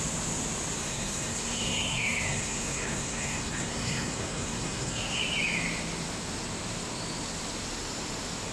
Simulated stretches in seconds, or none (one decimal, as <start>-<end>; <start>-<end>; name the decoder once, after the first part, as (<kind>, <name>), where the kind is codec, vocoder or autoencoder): 0.8-5.2 (codec, SNAC)